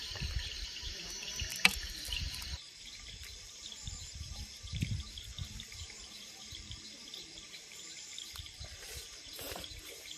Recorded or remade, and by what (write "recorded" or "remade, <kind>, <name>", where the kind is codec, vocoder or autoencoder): remade, vocoder, BigVGAN v2